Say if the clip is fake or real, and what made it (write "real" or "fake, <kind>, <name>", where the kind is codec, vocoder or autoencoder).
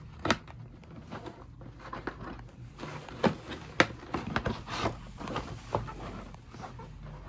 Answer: real